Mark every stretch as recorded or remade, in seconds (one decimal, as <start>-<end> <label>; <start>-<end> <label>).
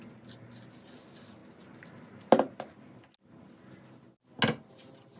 0.0-5.2 recorded